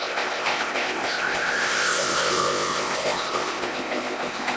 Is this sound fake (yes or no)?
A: yes